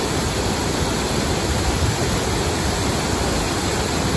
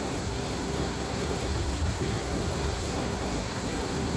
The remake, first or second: second